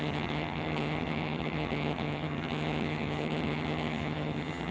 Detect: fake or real fake